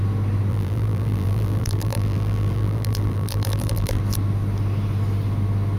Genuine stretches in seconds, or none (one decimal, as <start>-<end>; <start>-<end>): 0.0-0.5; 4.0-5.8